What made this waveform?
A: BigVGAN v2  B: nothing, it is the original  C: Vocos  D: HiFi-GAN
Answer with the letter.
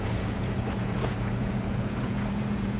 C